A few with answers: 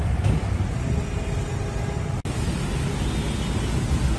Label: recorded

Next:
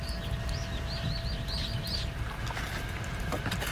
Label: recorded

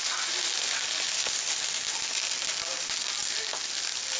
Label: recorded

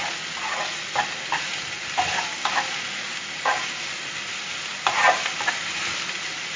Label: recorded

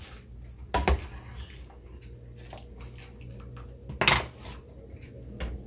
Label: recorded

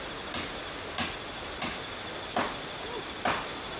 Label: recorded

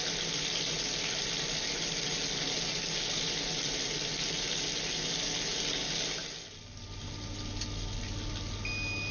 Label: recorded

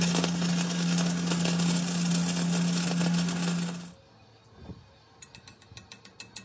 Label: recorded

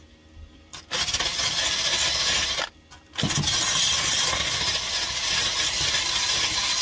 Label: recorded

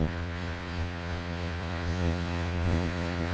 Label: remade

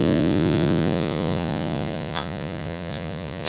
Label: remade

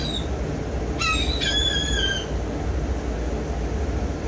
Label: recorded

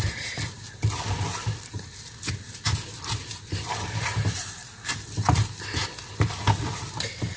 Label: recorded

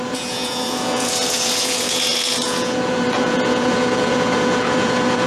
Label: remade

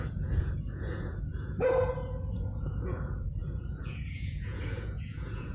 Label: remade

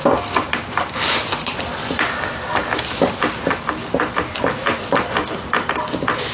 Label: recorded